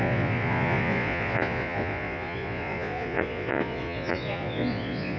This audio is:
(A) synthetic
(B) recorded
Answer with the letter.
A